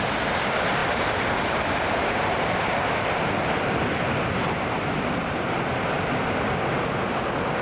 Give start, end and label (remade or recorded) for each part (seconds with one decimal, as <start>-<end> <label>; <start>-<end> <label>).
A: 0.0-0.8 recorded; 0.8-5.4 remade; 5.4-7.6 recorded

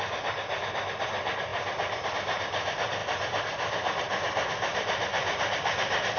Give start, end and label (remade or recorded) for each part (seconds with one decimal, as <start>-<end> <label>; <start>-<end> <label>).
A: 0.0-1.5 recorded; 1.5-2.1 remade; 2.1-3.0 recorded; 3.0-6.2 remade

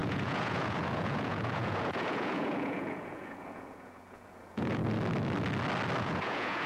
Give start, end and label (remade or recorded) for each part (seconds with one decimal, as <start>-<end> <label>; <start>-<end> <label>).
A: 0.0-4.8 remade; 4.8-6.0 recorded; 6.0-6.7 remade